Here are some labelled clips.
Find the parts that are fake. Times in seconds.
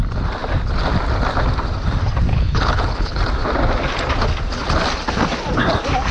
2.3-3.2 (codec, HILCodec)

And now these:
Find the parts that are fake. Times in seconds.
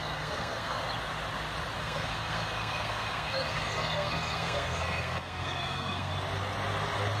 0.0-0.8 (codec, SNAC); 1.8-6.1